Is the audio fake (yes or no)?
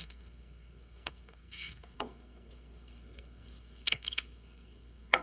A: yes